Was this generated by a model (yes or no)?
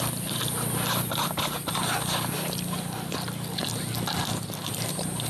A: no